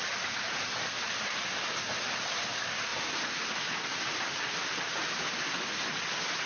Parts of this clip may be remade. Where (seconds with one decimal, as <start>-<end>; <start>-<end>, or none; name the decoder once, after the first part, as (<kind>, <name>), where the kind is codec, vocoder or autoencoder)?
none